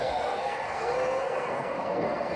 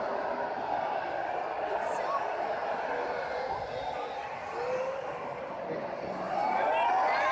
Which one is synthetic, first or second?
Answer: first